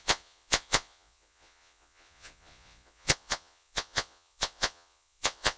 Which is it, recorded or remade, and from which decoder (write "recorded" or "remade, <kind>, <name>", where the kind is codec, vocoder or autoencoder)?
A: remade, vocoder, Vocos